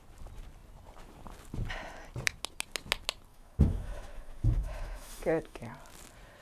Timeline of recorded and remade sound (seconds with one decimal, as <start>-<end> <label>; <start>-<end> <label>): 0.0-3.3 recorded; 3.3-5.7 remade; 5.7-6.4 recorded